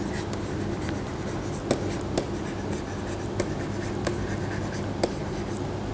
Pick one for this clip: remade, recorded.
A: recorded